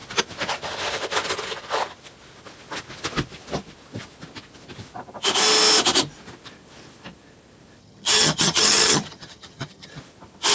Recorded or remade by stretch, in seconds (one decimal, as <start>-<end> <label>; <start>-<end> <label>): 0.0-7.8 recorded; 7.8-10.0 remade; 10.0-10.5 recorded